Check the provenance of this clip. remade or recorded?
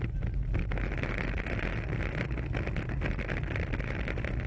recorded